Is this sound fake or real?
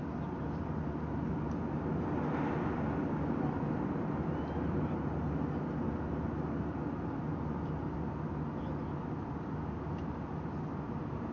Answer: real